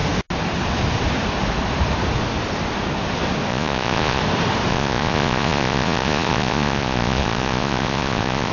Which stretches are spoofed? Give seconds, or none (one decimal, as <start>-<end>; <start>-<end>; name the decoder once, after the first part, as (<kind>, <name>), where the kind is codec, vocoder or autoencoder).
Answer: 3.5-4.2 (vocoder, Vocos); 4.7-8.5